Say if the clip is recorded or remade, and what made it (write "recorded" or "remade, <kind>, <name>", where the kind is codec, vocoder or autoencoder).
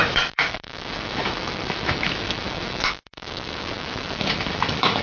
remade, autoencoder, DAC-VAE